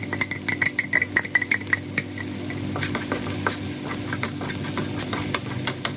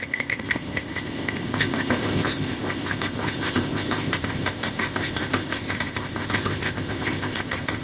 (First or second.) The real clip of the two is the first